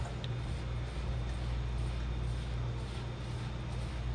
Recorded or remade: recorded